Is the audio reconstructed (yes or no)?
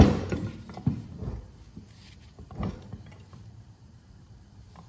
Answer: yes